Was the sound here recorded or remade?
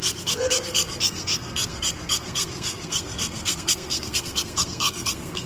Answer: remade